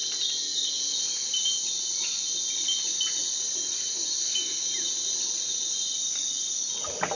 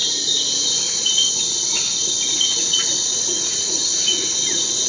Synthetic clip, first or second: second